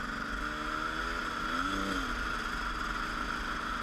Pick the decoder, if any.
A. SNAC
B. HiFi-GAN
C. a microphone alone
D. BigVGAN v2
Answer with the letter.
C